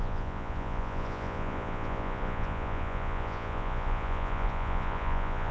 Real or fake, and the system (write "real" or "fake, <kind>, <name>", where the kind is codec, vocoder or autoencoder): fake, vocoder, Vocos